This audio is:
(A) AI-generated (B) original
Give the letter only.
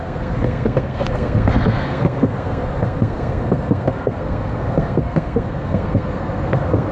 A